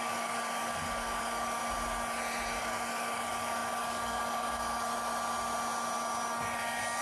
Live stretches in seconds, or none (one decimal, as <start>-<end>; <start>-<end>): 1.6-2.6; 4.9-7.0